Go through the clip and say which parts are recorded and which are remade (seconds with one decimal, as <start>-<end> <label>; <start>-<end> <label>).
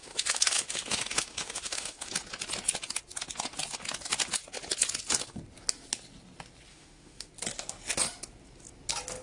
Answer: 0.0-2.1 remade; 2.1-6.7 recorded; 6.7-7.3 remade; 7.3-9.2 recorded